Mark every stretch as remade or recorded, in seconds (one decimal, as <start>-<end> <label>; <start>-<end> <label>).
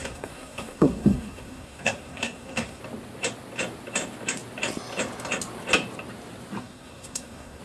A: 0.0-2.8 remade; 2.8-6.6 recorded; 6.6-7.6 remade